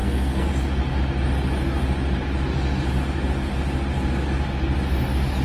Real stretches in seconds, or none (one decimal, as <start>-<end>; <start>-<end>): 0.5-5.4